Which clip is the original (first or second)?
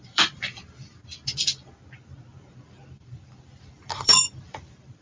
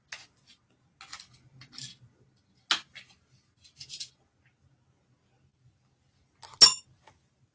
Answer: second